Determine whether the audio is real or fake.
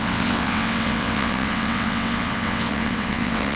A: fake